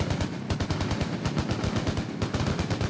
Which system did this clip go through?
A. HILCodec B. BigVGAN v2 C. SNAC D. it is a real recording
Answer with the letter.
D